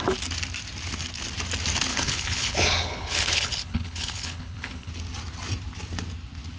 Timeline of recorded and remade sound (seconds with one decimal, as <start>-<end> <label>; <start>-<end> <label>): 0.0-1.9 recorded; 1.9-4.9 remade; 4.9-6.6 recorded